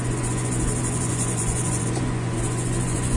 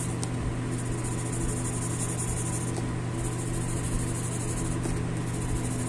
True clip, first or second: second